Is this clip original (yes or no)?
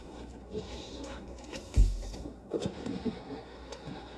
no